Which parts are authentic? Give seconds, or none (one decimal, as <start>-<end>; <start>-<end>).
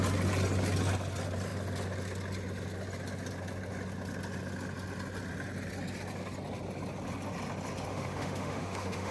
0.0-7.9